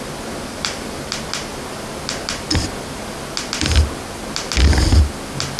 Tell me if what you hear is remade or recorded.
recorded